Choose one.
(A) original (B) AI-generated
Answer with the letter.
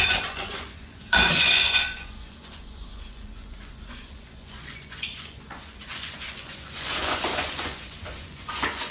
B